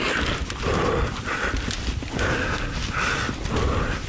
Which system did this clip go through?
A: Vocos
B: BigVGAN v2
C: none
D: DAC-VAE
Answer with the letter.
C